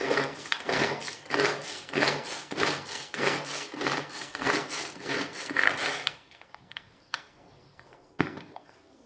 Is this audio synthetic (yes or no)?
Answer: yes